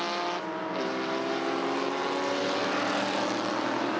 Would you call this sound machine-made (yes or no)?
no